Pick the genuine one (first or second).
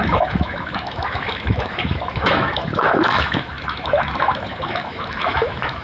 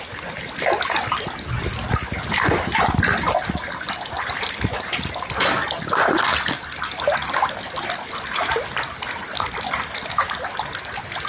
second